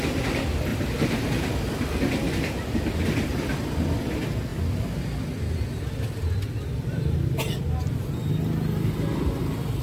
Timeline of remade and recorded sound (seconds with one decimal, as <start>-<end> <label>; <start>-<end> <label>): 0.0-0.7 recorded; 0.7-1.6 remade; 1.6-9.8 recorded